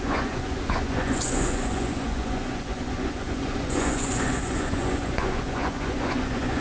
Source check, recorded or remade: remade